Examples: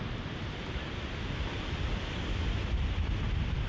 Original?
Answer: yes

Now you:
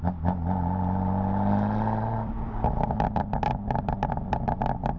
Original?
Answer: yes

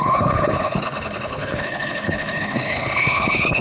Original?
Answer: no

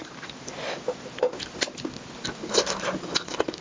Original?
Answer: yes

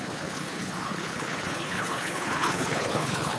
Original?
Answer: no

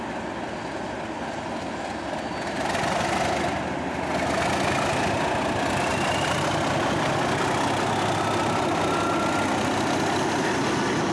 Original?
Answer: yes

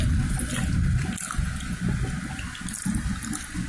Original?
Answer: yes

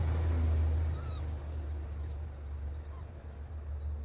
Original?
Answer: yes